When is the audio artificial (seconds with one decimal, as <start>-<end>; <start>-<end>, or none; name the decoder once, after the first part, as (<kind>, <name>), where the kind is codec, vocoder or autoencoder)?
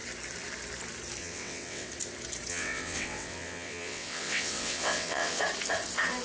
1.2-1.9 (vocoder, WaveNeXt); 2.5-5.4